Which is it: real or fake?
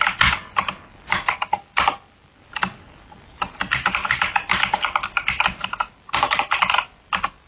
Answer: real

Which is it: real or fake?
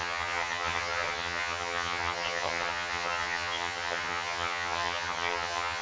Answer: fake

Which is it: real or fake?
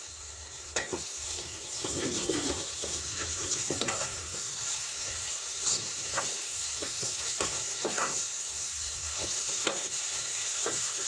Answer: fake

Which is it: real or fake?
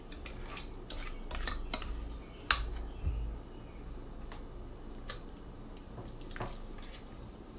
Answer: real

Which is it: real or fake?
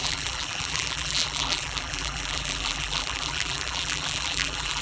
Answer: fake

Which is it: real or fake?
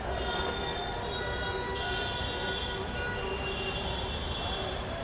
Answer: real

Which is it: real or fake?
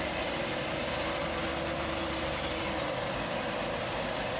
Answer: fake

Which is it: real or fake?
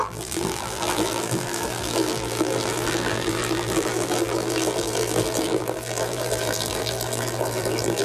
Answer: fake